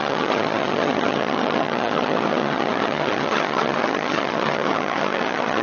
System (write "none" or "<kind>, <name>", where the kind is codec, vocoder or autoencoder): vocoder, HiFi-GAN